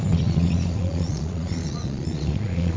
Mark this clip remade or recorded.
remade